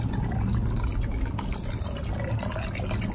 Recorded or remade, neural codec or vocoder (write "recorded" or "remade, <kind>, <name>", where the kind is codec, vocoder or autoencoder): recorded